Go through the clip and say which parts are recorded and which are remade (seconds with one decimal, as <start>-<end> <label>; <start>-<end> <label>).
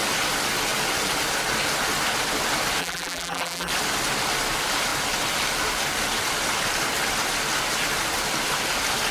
0.0-2.8 recorded; 2.8-3.7 remade; 3.7-9.1 recorded